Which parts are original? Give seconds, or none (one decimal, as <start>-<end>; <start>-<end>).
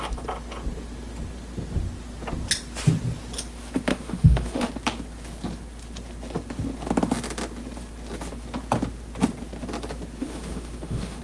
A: 0.0-3.9; 4.7-10.2